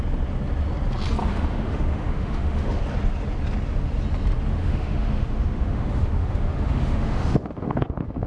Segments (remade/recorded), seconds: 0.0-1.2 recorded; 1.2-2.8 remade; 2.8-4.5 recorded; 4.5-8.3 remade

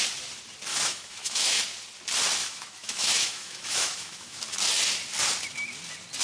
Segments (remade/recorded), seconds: 0.0-0.7 recorded; 0.7-1.6 remade; 1.6-2.4 recorded; 2.4-4.4 remade; 4.4-6.2 recorded